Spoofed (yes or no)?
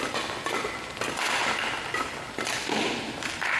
no